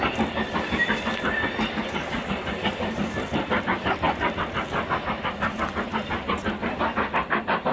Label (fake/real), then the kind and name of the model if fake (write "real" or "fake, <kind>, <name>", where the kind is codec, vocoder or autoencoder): real